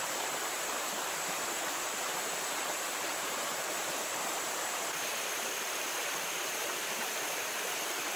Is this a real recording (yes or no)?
no